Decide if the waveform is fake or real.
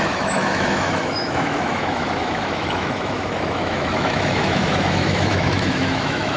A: fake